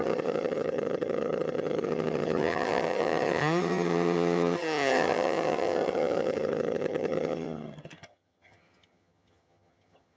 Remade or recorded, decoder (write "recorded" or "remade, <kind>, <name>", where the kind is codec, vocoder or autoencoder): remade, vocoder, HiFi-GAN